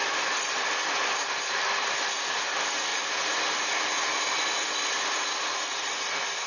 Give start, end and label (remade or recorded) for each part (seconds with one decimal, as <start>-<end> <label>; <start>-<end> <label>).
0.0-6.5 recorded